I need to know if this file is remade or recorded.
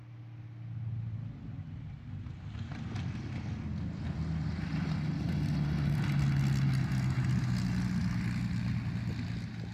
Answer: recorded